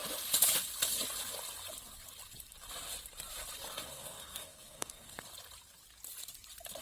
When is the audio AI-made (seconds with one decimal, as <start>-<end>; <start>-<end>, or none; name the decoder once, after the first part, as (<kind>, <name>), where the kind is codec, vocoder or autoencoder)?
3.9-5.2 (codec, SNAC)